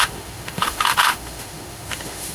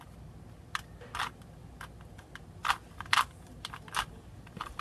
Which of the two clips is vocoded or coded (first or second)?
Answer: first